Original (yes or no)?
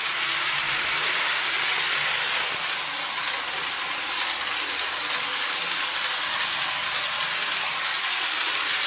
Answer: yes